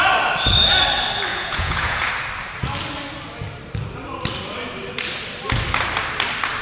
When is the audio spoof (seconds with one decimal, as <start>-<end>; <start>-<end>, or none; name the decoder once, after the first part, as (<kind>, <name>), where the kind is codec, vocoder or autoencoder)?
1.3-2.1 (vocoder, Vocos)